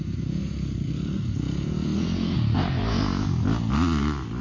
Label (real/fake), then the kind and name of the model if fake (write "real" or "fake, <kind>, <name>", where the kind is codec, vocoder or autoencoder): real